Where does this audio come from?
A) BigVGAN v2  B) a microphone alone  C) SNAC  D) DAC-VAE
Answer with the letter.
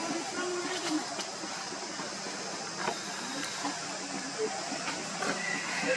B